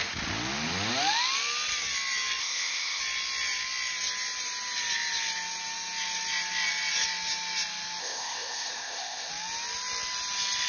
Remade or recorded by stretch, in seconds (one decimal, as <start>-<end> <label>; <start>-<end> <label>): 0.0-2.4 recorded; 2.4-3.0 remade; 3.0-8.0 recorded; 8.0-9.3 remade; 9.3-10.7 recorded